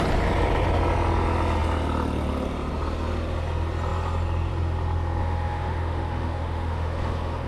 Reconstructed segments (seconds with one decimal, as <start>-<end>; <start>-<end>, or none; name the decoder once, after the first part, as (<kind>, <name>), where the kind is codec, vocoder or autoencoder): 5.2-7.5 (autoencoder, DAC-VAE)